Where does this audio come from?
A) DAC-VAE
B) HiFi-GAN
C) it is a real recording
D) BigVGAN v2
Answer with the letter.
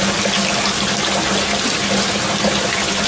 C